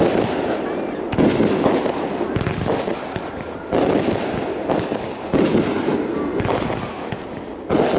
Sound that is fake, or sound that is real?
real